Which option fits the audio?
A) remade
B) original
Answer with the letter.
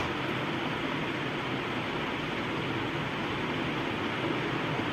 B